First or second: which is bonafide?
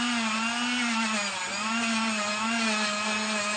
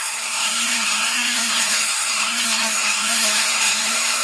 first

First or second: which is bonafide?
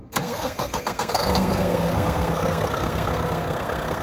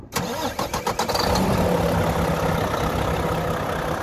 second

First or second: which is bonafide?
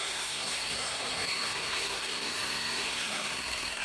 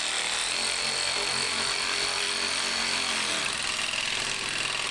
second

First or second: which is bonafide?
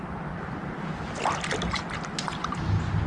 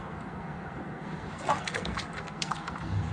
first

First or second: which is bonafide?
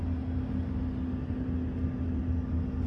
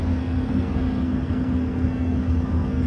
first